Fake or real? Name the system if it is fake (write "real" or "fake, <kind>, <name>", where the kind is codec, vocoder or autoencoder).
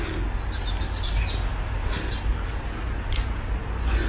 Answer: real